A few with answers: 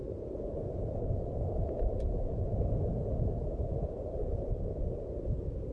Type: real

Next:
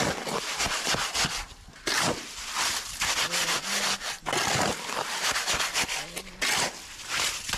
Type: real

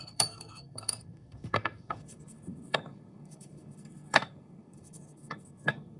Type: fake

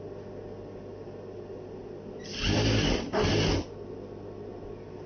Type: real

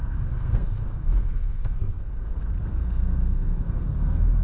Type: fake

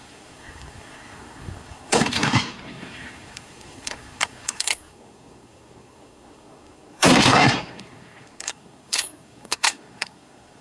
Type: fake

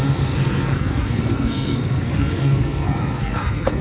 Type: fake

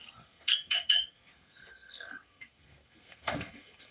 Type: fake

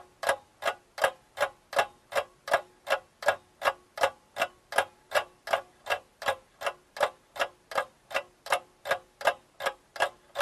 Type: real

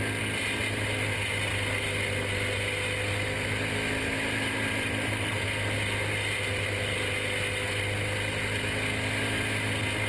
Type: real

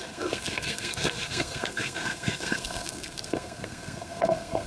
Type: fake